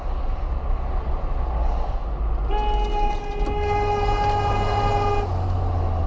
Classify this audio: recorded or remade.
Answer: recorded